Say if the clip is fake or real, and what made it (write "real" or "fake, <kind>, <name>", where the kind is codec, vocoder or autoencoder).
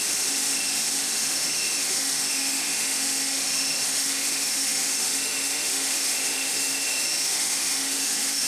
fake, autoencoder, DAC-VAE